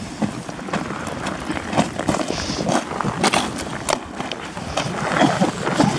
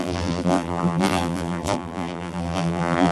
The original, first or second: first